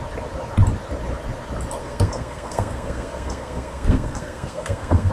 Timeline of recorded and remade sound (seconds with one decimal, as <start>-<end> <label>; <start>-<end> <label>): 0.0-1.8 recorded; 1.8-5.1 remade

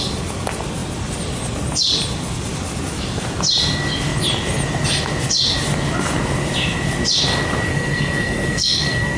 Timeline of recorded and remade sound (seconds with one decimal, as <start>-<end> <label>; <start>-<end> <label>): 0.0-7.7 recorded; 7.7-9.2 remade

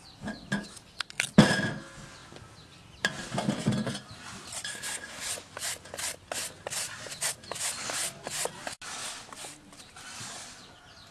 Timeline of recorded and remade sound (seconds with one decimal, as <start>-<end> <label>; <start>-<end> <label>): 0.0-4.7 recorded; 4.7-5.3 remade; 5.3-11.1 recorded

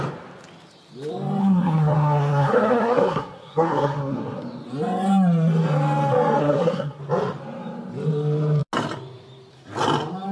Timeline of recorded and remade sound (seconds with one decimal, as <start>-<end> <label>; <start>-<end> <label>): 0.0-1.4 recorded; 1.4-4.4 remade; 4.4-6.4 recorded; 6.4-7.0 remade; 7.0-10.3 recorded

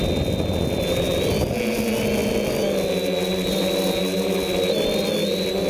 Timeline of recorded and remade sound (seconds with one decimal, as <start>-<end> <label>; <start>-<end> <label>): 0.0-5.7 recorded

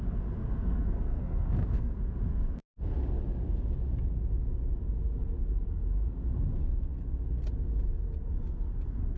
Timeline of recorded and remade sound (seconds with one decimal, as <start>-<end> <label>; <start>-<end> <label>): 0.0-0.4 recorded; 0.4-1.9 remade; 1.9-9.2 recorded

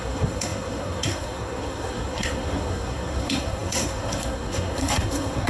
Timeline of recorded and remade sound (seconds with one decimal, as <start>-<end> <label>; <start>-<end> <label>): 0.0-5.5 remade

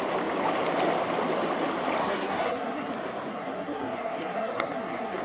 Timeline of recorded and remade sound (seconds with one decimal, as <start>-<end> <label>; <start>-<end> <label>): 0.0-2.0 recorded; 2.0-2.9 remade; 2.9-3.3 recorded; 3.3-5.2 remade